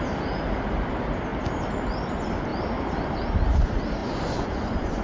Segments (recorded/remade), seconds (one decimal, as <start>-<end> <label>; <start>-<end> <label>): 0.0-4.0 recorded; 4.0-5.0 remade